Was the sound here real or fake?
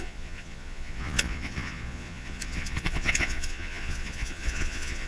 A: fake